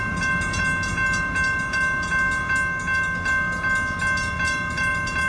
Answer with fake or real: real